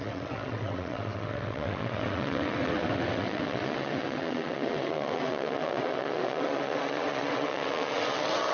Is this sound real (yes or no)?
no